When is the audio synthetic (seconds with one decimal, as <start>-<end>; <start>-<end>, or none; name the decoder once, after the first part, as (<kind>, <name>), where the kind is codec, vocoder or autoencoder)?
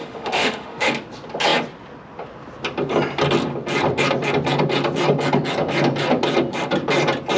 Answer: 0.0-0.9 (autoencoder, DAC-VAE)